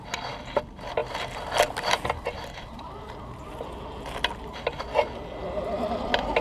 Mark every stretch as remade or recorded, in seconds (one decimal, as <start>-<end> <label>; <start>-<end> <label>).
0.0-6.4 recorded